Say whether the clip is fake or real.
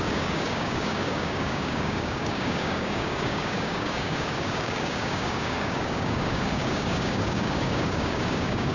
fake